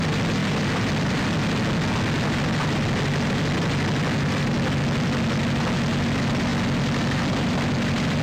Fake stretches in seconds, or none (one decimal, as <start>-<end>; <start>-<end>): 6.5-8.2